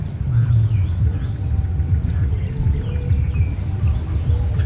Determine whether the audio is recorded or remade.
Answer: recorded